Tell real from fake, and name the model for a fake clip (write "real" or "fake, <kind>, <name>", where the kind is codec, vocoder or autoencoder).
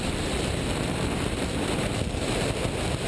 fake, vocoder, BigVGAN v2